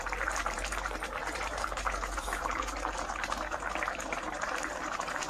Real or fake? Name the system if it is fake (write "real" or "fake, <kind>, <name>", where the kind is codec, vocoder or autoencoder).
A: fake, vocoder, BigVGAN v2